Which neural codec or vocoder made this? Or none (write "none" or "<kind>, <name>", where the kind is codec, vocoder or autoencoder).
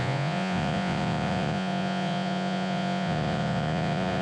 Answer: vocoder, Vocos